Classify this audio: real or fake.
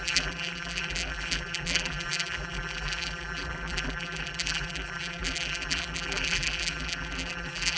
fake